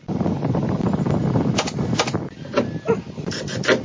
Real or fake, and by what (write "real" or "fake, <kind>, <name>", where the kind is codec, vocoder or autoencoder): real